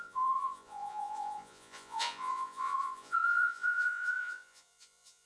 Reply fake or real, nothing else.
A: fake